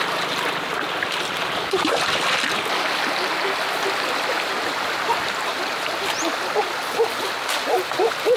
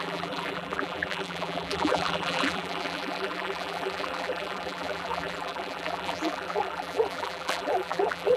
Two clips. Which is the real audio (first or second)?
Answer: first